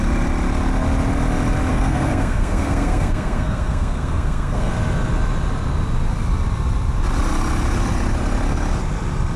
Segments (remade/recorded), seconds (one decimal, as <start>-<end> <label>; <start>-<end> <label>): 0.0-1.7 recorded; 1.7-4.7 remade; 4.7-9.4 recorded